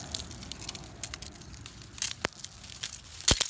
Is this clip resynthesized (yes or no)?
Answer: no